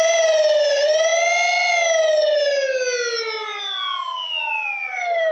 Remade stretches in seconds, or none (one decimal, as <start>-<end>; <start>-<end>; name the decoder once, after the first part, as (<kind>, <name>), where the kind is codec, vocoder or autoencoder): none